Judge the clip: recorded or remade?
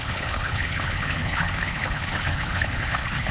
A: remade